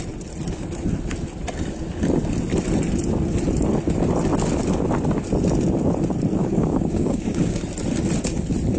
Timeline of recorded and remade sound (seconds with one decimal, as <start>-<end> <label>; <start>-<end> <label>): 0.0-6.4 recorded; 6.4-7.6 remade; 7.6-8.8 recorded

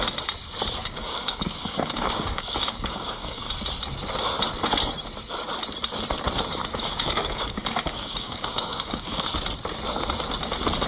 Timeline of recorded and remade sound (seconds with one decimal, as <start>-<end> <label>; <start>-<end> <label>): 0.0-0.8 recorded; 0.8-3.5 remade; 3.5-6.6 recorded; 6.6-9.3 remade; 9.3-10.9 recorded

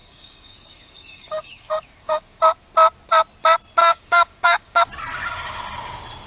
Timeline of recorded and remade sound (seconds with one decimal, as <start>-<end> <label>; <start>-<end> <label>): 0.0-2.4 remade; 2.4-3.8 recorded; 3.8-4.8 remade; 4.8-6.3 recorded